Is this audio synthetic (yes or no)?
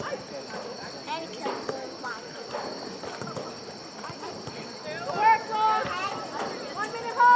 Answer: no